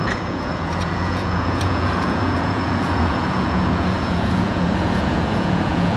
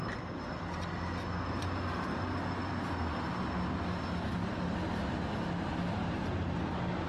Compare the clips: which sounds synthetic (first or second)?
first